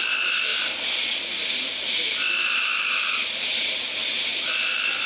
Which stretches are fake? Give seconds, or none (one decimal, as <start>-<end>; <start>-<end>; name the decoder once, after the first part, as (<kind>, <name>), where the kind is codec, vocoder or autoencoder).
0.0-0.5 (vocoder, BigVGAN v2); 3.4-4.3